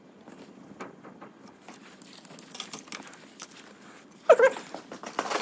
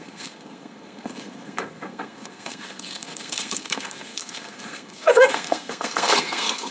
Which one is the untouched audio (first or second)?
first